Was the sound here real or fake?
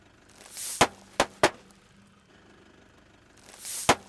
real